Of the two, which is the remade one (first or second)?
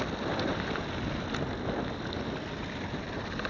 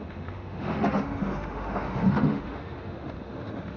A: second